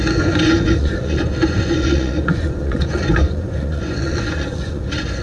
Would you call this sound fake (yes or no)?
yes